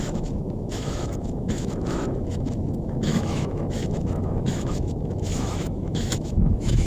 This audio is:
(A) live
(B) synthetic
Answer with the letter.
B